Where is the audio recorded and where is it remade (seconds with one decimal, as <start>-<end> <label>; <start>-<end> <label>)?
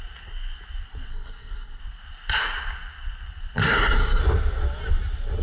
0.0-1.1 recorded; 1.1-1.8 remade; 1.8-3.6 recorded; 3.6-4.2 remade; 4.2-5.4 recorded